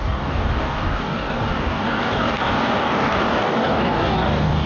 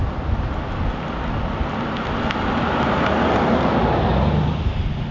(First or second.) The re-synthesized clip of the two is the first